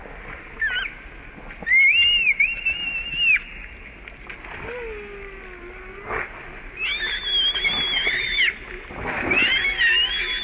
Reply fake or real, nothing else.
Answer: real